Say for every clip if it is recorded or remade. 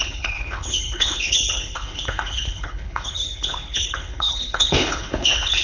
remade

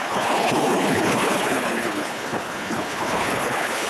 remade